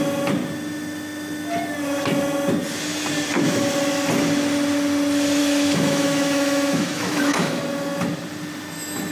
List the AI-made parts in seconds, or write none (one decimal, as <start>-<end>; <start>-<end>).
5.4-7.6